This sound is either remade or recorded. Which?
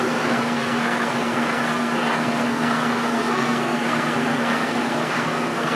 remade